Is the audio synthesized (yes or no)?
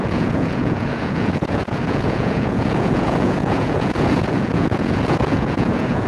yes